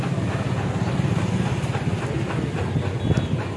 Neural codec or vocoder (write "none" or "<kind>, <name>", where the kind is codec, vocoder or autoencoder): none